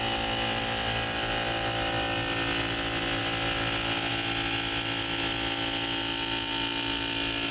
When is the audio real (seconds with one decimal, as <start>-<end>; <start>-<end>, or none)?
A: 0.0-7.5